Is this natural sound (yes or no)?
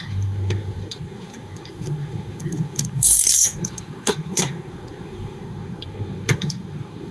no